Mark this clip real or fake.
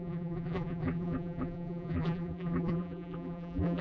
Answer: fake